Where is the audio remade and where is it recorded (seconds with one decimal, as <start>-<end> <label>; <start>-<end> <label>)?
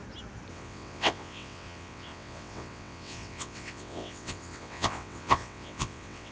0.0-0.5 recorded; 0.5-6.3 remade